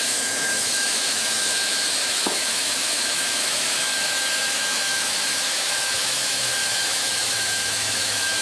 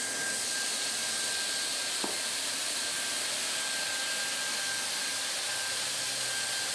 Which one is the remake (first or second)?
first